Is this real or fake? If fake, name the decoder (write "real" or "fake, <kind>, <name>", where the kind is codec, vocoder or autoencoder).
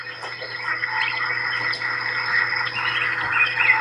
real